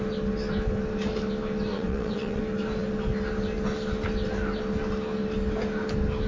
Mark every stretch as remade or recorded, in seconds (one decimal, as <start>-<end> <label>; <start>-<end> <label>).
0.0-1.7 recorded; 1.7-2.4 remade; 2.4-6.3 recorded

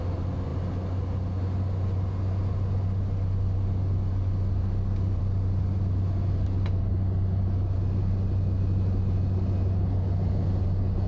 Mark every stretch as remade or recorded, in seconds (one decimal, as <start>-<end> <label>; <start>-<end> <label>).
0.0-11.1 recorded

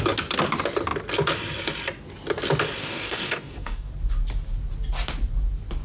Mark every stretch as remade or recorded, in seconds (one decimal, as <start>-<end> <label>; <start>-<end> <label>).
0.0-2.8 recorded; 2.8-3.9 remade; 3.9-5.8 recorded